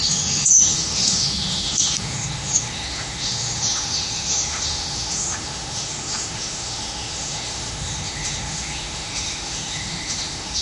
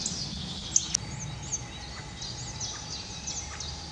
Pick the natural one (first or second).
second